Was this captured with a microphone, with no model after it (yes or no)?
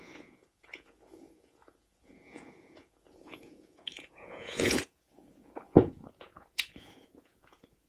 no